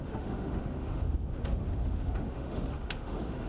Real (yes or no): no